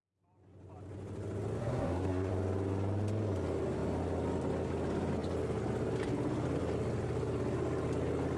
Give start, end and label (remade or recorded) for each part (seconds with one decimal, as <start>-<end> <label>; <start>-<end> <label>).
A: 0.0-1.6 recorded; 1.6-2.3 remade; 2.3-8.4 recorded